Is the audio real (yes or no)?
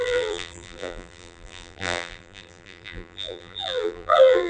no